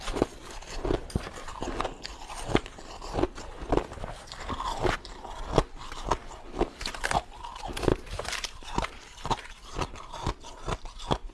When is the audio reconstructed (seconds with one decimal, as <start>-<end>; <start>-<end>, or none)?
1.0-1.6; 7.9-10.1